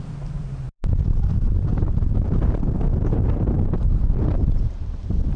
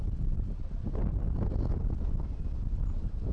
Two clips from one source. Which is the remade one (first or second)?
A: first